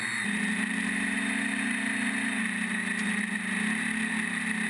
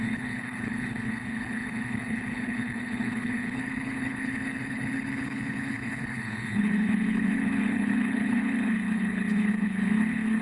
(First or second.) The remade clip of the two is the second